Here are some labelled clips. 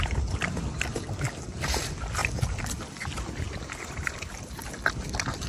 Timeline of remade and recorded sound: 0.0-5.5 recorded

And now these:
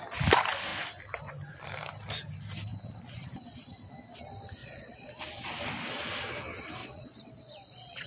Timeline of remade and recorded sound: 0.0-4.6 recorded; 4.6-5.1 remade; 5.1-6.8 recorded; 6.8-8.1 remade

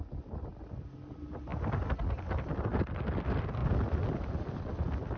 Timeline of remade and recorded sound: 0.0-5.2 recorded

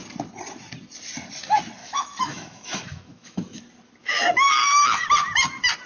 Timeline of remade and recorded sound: 0.0-1.8 recorded; 1.8-3.6 remade; 3.6-4.0 recorded; 4.0-5.0 remade; 5.0-5.9 recorded

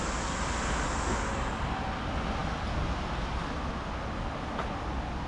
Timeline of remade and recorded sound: 0.0-5.3 recorded

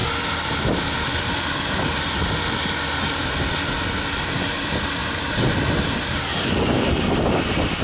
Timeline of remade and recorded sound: 0.0-7.8 remade

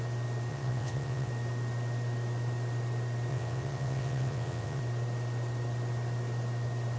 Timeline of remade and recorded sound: 0.0-0.5 recorded; 0.5-1.3 remade; 1.3-3.3 recorded; 3.3-4.8 remade; 4.8-7.0 recorded

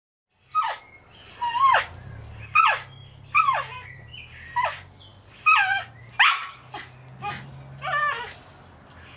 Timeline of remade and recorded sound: 0.0-9.2 recorded